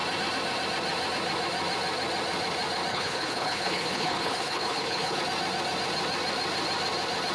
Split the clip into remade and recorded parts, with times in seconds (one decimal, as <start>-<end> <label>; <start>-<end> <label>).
0.0-2.9 recorded; 2.9-5.2 remade; 5.2-7.3 recorded